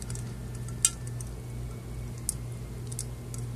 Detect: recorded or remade recorded